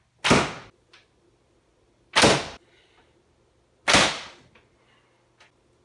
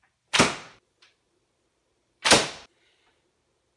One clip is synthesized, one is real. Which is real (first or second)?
first